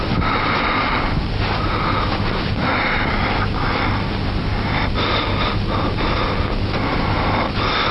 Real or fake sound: real